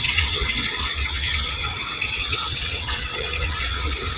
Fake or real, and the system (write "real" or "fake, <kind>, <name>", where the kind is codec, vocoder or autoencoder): fake, vocoder, WaveNeXt